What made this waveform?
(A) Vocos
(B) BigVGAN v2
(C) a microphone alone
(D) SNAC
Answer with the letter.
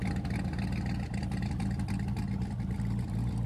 C